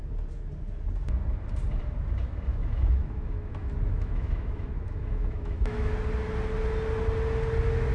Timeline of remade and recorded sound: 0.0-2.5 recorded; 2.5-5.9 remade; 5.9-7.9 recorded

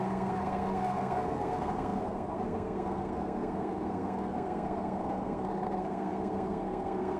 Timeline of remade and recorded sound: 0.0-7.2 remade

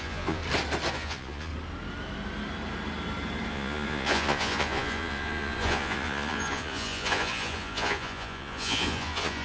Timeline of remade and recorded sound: 0.0-0.4 remade; 0.4-0.9 recorded; 0.9-1.5 remade; 1.5-3.5 recorded; 3.5-9.4 remade